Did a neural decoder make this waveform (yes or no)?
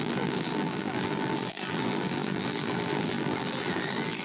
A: yes